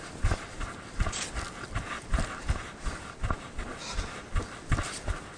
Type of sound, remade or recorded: recorded